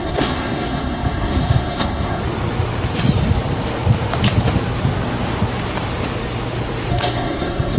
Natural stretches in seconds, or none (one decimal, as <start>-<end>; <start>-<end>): 2.2-6.9